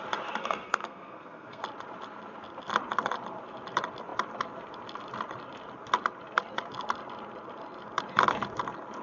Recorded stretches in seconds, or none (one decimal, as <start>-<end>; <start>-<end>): 0.0-0.4; 1.6-9.0